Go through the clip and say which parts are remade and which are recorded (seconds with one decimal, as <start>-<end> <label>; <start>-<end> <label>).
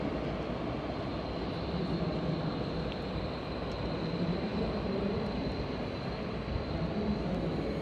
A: 0.0-4.5 recorded; 4.5-5.6 remade; 5.6-7.8 recorded